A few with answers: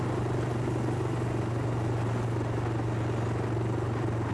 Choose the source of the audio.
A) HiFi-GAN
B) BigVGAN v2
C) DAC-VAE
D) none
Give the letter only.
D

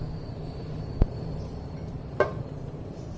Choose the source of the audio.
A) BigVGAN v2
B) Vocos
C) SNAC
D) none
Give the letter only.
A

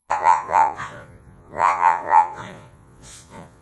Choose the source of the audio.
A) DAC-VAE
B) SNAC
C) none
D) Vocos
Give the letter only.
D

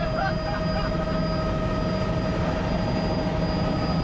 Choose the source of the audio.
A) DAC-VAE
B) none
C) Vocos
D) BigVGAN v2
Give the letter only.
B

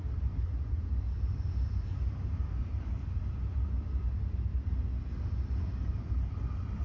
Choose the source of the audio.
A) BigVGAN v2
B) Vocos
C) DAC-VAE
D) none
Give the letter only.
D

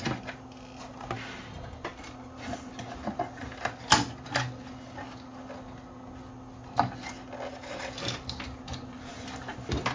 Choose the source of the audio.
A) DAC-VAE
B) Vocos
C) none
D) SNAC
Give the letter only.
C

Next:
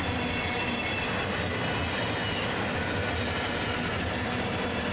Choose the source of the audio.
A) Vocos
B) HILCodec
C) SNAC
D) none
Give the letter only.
D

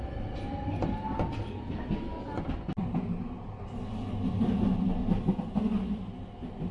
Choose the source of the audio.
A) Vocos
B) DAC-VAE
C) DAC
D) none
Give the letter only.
D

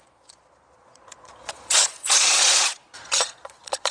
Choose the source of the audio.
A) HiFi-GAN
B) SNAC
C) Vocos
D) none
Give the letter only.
C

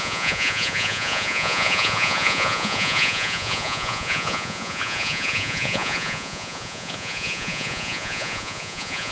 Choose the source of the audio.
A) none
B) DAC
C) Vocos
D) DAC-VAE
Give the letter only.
C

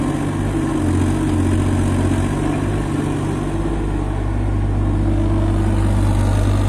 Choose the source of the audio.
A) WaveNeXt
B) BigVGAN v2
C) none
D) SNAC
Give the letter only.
C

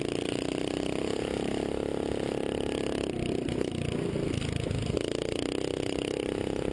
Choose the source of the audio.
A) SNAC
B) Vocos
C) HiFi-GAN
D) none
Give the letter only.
D